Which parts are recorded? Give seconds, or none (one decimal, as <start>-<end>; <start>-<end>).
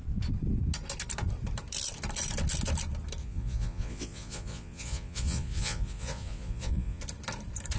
0.0-3.2; 7.0-7.8